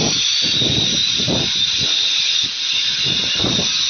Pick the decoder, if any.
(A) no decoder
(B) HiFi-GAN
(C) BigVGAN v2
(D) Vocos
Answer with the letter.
A